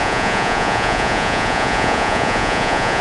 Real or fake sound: fake